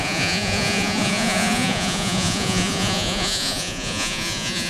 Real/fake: fake